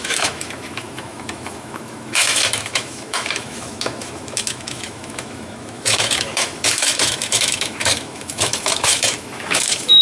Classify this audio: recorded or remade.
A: remade